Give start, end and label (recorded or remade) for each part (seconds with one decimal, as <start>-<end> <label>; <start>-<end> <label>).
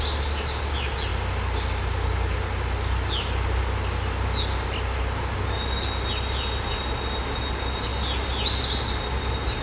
0.0-9.6 recorded